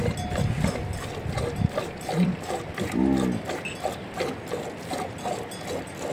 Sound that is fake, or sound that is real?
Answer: real